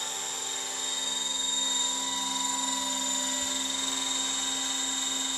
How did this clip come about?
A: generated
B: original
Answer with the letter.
B